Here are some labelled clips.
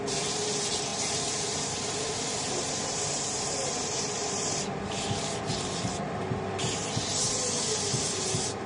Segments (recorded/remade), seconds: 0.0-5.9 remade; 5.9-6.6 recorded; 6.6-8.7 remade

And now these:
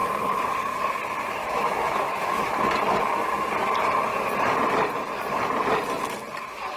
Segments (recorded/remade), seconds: 0.0-1.4 recorded; 1.4-2.5 remade; 2.5-6.8 recorded

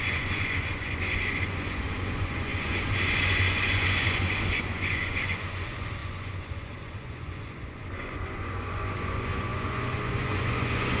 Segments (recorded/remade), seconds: 0.0-11.0 remade

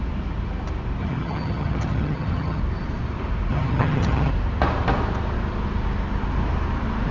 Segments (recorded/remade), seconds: 0.0-1.0 recorded; 1.0-2.6 remade; 2.6-3.5 recorded; 3.5-4.3 remade; 4.3-7.1 recorded